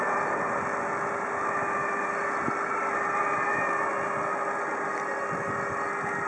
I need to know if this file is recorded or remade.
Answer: recorded